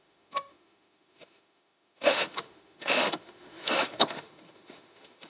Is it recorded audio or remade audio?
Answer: remade